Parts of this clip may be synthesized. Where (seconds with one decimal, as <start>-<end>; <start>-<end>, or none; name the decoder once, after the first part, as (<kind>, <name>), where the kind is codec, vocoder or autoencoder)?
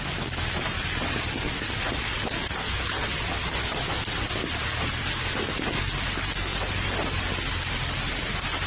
none